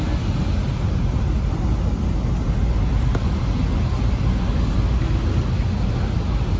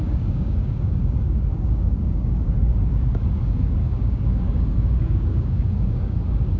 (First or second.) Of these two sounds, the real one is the first